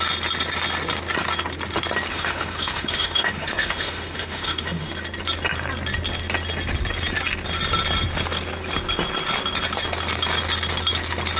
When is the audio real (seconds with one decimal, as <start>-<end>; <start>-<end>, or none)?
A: 0.0-2.1; 4.9-11.4